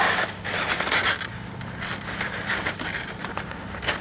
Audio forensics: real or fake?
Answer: fake